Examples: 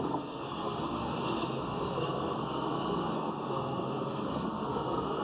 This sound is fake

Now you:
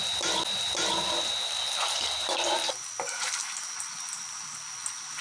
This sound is real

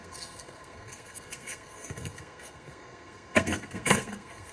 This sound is fake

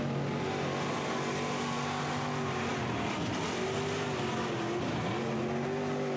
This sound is real